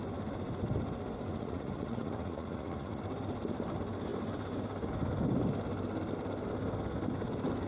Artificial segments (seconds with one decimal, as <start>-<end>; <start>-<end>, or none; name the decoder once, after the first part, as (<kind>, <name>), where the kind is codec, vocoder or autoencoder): 1.3-3.0 (vocoder, Vocos)